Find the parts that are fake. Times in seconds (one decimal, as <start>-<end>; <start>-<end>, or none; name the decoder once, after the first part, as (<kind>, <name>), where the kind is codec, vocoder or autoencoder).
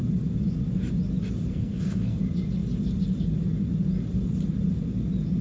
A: 1.5-2.2 (codec, SNAC)